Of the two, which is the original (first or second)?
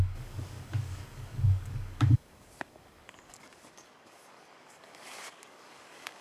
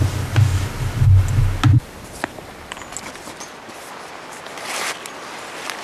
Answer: second